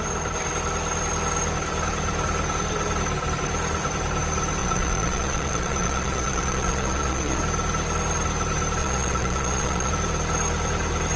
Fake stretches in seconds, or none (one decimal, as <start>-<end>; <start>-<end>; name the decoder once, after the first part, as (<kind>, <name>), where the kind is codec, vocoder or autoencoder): 4.6-7.4 (vocoder, Vocos); 8.8-9.9